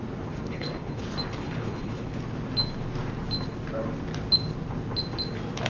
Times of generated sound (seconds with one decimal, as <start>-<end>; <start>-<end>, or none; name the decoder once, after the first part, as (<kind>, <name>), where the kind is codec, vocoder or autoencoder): 0.5-1.0 (codec, HILCodec); 1.4-2.2

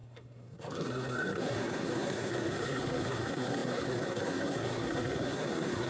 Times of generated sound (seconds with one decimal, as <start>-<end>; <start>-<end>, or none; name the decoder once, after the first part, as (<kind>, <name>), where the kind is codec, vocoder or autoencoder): 0.0-5.9 (codec, SNAC)